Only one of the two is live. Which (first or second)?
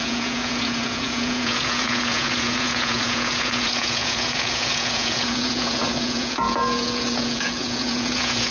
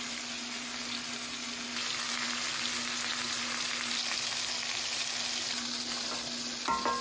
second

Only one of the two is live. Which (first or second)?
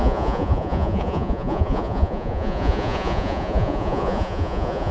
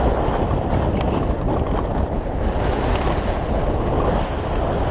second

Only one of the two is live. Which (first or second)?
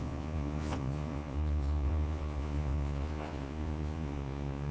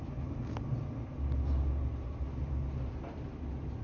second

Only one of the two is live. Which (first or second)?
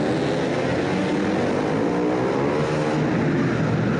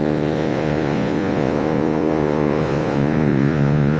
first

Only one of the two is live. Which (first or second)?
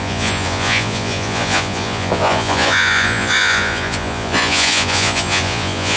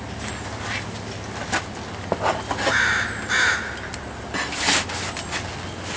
second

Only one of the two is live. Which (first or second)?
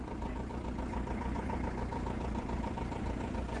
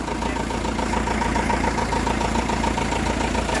second